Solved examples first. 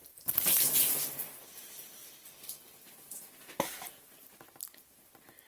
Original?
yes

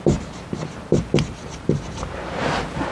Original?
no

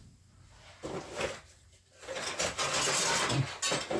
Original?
yes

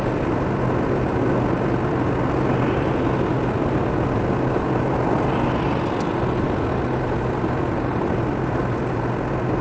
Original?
yes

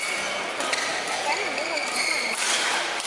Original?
yes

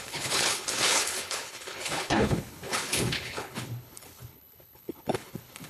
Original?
no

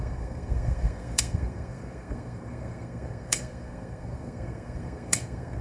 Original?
no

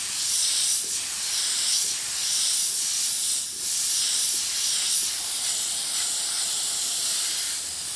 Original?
yes